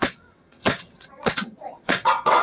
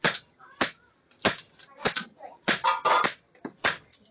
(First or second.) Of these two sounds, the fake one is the first